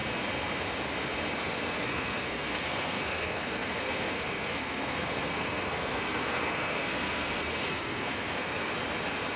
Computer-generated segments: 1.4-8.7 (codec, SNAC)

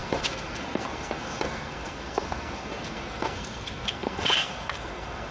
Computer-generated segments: 0.0-5.3 (codec, SNAC)

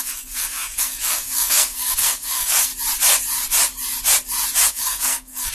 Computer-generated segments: 0.0-2.7 (codec, SNAC); 4.7-5.5

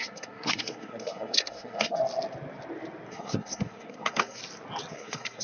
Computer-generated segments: 0.0-2.0 (codec, SNAC); 3.1-4.4; 4.9-5.4

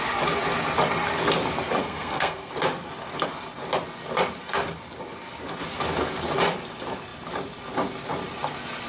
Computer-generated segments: 1.8-2.5 (codec, SNAC)

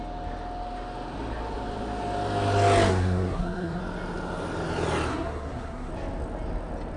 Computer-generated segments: 2.9-3.8 (codec, SNAC); 5.1-5.9

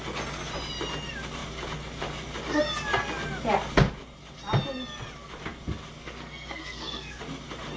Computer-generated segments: 6.0-7.2 (codec, SNAC)

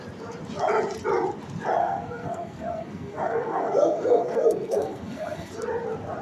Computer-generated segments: 1.8-5.5 (codec, SNAC)